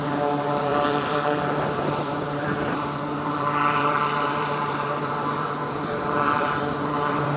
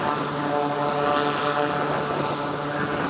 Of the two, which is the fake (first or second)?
first